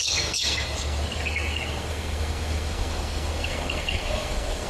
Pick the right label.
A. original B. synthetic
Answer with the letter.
B